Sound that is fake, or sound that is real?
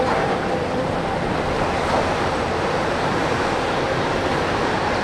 fake